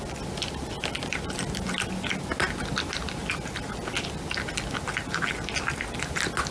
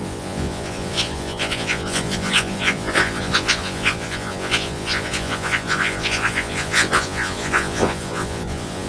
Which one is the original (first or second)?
first